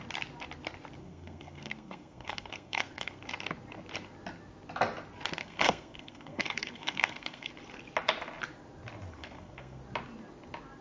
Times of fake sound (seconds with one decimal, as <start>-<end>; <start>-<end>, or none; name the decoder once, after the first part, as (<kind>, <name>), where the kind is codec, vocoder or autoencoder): 1.0-3.2 (codec, SNAC); 5.4-7.5; 9.2-9.8